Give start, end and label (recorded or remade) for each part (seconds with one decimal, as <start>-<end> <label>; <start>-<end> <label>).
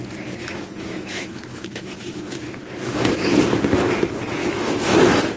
0.0-0.4 recorded; 0.4-3.4 remade; 3.4-4.4 recorded; 4.4-5.0 remade; 5.0-5.4 recorded